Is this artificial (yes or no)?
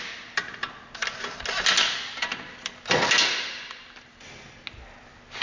no